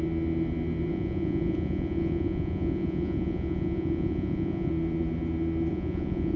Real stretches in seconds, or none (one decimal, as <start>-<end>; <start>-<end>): 0.0-0.9; 4.7-5.7